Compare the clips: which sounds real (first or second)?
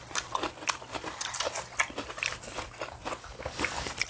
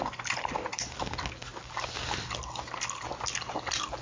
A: second